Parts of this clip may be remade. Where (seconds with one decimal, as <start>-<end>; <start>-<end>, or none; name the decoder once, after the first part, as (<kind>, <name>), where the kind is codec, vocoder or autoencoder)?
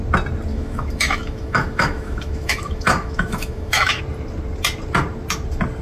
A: 0.5-4.0 (autoencoder, DAC-VAE)